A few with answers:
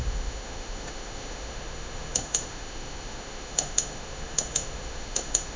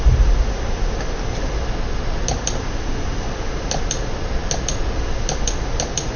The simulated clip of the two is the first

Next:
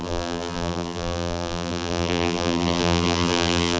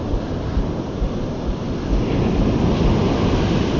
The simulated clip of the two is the first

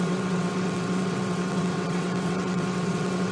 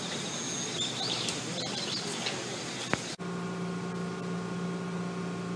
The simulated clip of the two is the first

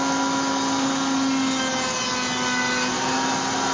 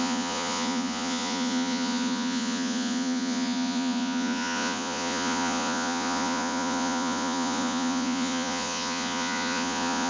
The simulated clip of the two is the second